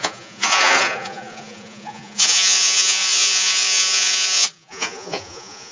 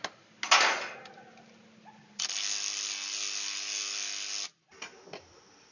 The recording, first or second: second